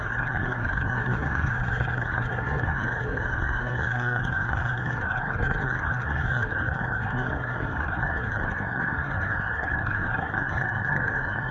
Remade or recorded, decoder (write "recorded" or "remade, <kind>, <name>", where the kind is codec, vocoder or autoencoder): remade, codec, SNAC